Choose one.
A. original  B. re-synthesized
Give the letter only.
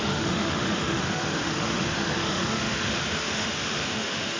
B